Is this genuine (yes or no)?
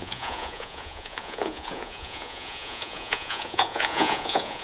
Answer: no